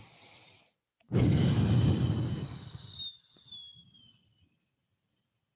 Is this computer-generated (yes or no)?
no